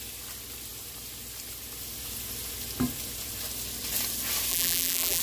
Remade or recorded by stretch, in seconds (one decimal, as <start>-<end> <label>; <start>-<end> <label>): 0.0-4.5 recorded; 4.5-5.2 remade